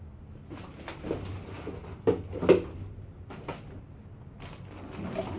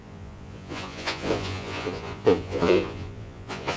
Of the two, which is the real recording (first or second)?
first